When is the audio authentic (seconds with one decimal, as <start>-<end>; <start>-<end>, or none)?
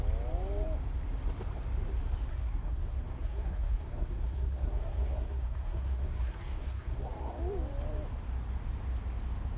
0.0-2.3; 7.4-9.6